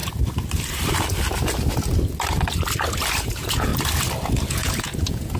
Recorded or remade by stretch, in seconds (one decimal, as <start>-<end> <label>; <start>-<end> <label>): 0.0-3.2 recorded; 3.2-3.7 remade; 3.7-4.5 recorded; 4.5-5.4 remade